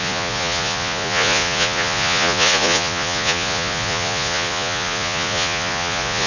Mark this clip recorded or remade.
remade